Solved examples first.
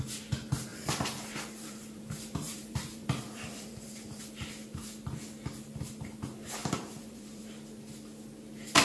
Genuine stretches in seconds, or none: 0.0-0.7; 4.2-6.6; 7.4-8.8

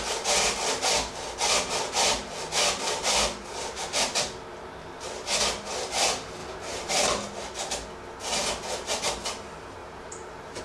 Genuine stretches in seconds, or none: 0.0-6.4; 6.9-9.8

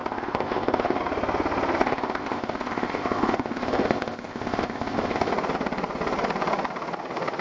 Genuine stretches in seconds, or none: 1.0-1.8; 5.3-7.4

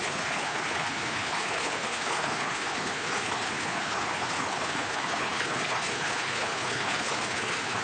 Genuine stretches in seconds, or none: none

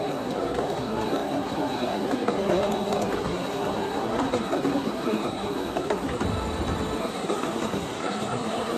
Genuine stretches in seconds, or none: 6.2-7.0

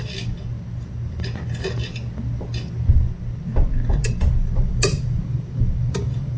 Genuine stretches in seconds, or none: 0.0-4.4

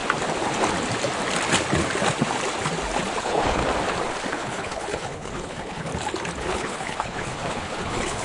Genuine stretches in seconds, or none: 0.0-3.2; 3.6-4.3; 5.9-6.4